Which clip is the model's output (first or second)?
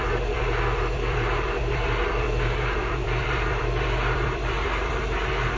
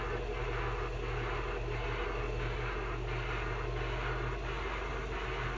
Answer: first